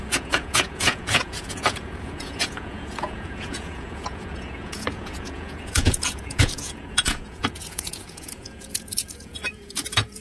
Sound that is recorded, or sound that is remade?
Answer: remade